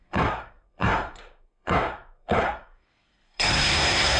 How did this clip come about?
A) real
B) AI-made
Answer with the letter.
B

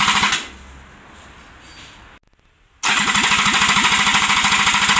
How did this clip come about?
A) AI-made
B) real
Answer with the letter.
B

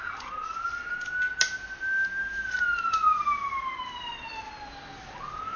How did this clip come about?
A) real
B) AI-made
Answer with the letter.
A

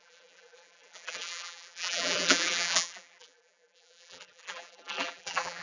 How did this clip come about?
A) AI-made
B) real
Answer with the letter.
A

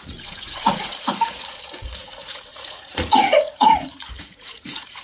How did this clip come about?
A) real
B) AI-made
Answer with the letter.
B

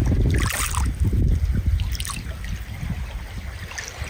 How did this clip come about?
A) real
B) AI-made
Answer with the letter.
A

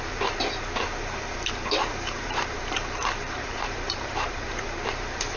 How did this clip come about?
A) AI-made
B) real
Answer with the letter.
A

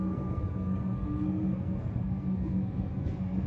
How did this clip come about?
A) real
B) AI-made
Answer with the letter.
B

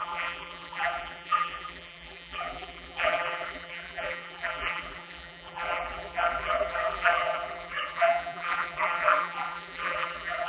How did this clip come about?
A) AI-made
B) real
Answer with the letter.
A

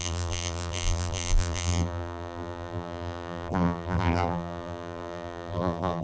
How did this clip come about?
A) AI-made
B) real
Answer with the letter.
A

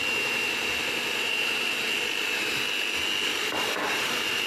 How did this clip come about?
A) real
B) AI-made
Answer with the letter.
A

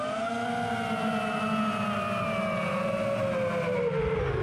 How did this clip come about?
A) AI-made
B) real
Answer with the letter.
B